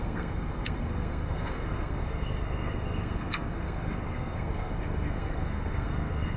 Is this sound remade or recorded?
remade